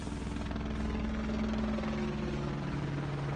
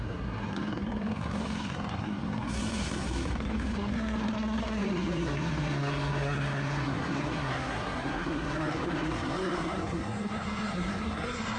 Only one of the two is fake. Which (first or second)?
second